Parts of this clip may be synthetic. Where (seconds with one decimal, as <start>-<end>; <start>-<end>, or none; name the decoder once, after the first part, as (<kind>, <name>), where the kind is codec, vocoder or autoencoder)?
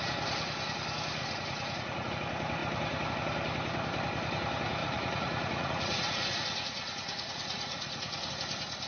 1.2-2.1 (vocoder, Vocos); 4.8-8.3